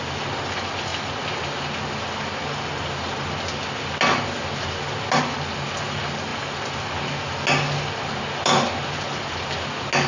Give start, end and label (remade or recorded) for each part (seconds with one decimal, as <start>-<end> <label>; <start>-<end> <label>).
0.0-10.1 recorded